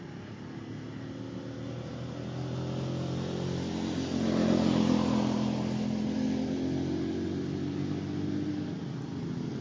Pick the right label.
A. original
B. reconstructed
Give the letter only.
A